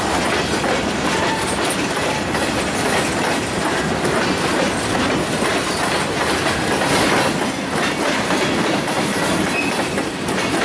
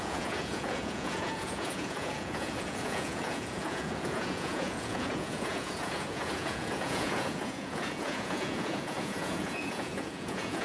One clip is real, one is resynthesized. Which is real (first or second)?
first